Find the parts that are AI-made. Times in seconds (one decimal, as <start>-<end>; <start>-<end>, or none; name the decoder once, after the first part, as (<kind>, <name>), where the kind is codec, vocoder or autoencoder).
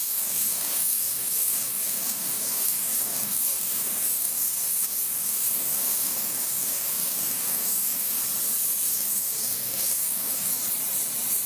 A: 0.0-8.2 (codec, DAC); 8.8-10.5